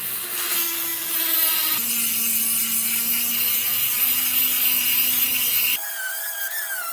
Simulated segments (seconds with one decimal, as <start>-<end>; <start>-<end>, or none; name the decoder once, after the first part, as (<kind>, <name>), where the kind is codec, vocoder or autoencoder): none